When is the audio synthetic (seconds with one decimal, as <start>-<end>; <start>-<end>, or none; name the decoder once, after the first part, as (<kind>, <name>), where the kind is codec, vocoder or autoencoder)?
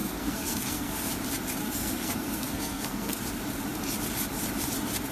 0.0-1.1 (codec, SNAC); 1.6-3.2